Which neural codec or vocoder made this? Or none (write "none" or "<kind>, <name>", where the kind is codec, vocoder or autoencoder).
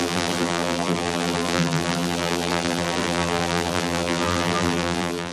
vocoder, BigVGAN v2